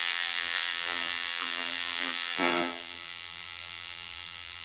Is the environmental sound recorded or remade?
remade